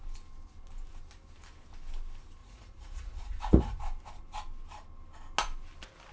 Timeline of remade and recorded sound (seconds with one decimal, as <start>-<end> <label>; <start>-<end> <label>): 0.0-2.4 recorded; 2.4-3.8 remade; 3.8-6.1 recorded